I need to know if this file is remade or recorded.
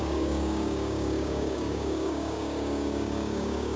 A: remade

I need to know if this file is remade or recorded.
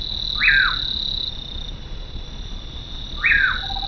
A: recorded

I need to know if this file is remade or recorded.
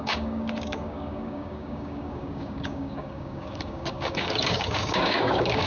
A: remade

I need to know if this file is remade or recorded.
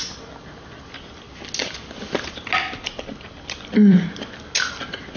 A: recorded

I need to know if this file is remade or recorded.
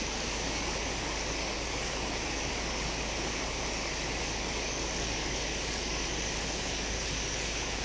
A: remade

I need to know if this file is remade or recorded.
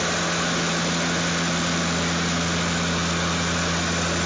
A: recorded